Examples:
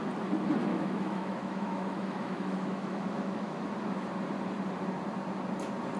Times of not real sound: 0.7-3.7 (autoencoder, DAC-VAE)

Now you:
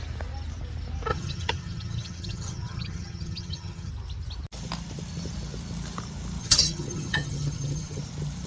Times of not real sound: 1.1-3.9 (vocoder, HiFi-GAN); 6.4-8.0

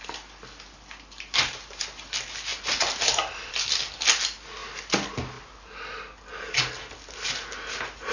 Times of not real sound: none

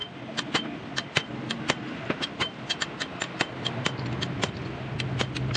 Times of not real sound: none

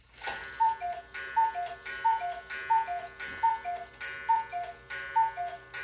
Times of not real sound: none

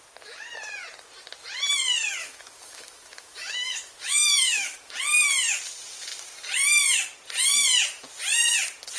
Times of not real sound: 2.2-4.9 (autoencoder, DAC-VAE)

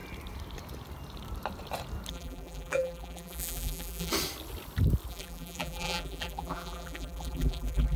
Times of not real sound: 2.1-4.1 (vocoder, BigVGAN v2); 5.1-8.0

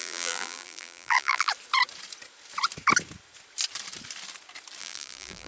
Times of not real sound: 0.0-1.5 (vocoder, BigVGAN v2); 4.8-5.5